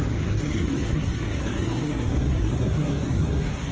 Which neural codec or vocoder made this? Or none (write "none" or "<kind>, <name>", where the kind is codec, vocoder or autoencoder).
codec, SNAC